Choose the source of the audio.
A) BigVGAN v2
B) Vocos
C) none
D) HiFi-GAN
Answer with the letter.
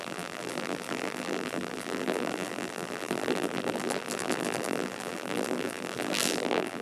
A